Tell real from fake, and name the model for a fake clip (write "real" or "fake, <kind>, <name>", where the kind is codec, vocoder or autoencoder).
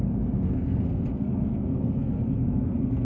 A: fake, codec, SNAC